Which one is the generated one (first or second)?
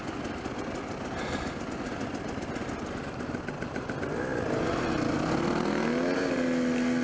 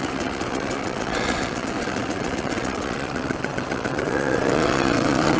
second